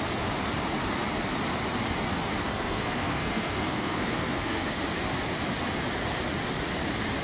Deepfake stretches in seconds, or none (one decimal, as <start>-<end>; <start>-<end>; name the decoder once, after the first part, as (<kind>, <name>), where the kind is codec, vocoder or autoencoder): 2.4-4.8 (codec, SNAC)